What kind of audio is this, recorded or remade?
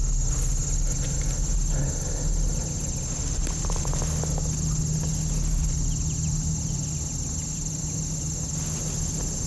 recorded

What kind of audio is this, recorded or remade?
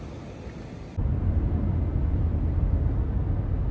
recorded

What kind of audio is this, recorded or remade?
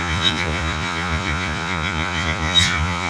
remade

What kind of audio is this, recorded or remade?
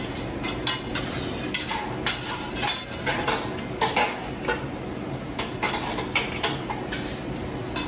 recorded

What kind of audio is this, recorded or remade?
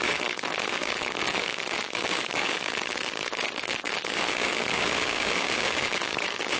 remade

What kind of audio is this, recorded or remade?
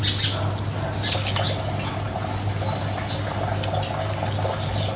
recorded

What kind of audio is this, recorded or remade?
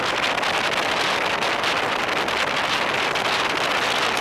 recorded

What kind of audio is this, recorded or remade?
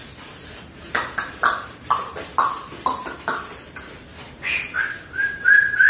recorded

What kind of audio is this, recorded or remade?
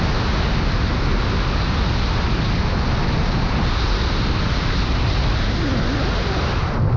recorded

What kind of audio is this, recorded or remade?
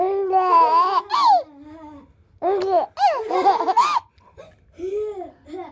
recorded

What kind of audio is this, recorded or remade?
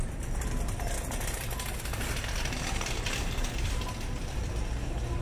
recorded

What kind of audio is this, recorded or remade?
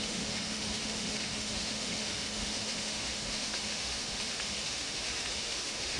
remade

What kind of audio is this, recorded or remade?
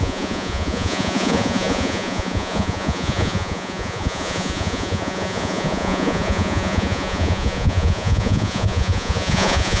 remade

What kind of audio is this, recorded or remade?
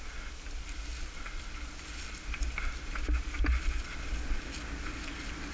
recorded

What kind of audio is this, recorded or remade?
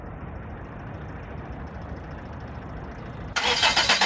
recorded